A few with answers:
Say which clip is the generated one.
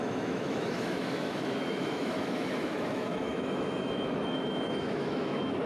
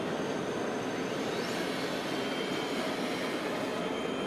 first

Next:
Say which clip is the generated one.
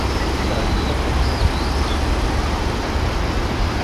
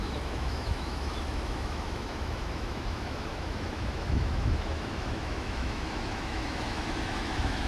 second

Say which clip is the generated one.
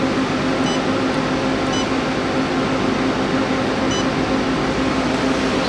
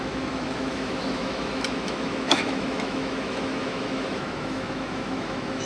second